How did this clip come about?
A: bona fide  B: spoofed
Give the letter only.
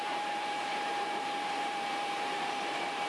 B